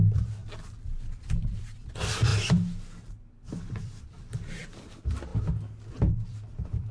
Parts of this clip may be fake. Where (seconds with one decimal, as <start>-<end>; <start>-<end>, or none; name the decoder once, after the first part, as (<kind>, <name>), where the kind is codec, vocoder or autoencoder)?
0.0-2.3 (vocoder, BigVGAN v2); 3.7-5.3; 5.9-6.9